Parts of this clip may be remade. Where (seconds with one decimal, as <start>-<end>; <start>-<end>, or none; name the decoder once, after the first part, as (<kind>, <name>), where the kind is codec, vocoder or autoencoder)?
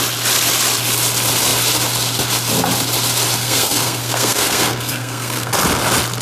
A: 3.4-5.5 (codec, SNAC)